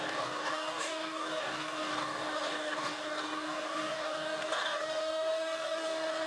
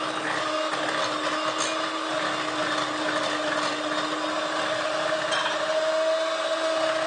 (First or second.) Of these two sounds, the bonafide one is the second